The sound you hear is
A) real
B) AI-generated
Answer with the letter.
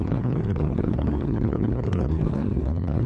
B